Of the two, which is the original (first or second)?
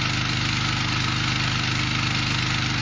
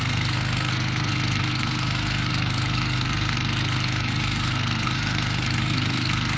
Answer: first